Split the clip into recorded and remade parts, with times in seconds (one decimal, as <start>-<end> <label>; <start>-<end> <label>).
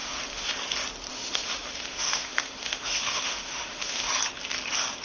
0.0-0.5 remade; 0.5-1.1 recorded; 1.1-4.1 remade; 4.1-5.0 recorded